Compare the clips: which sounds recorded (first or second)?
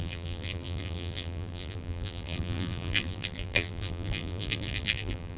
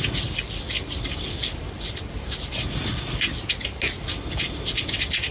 second